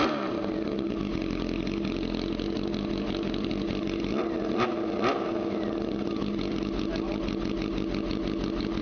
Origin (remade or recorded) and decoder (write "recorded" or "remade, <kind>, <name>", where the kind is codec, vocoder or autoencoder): recorded